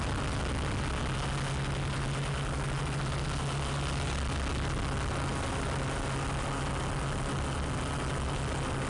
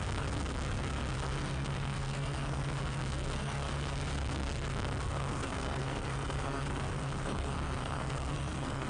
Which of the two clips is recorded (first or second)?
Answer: first